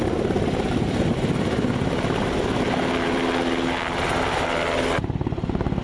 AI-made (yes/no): no